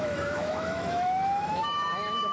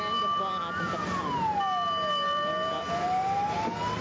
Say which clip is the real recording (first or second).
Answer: second